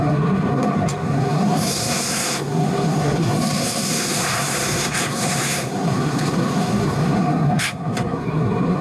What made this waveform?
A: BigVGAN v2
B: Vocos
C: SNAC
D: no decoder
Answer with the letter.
C